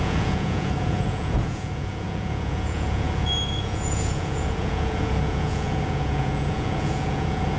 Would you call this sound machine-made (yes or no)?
yes